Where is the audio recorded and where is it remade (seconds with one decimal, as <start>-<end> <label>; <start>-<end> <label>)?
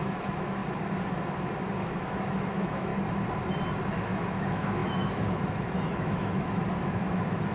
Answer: 0.0-0.6 remade; 0.6-2.0 recorded; 2.0-2.9 remade; 2.9-4.0 recorded; 4.0-7.5 remade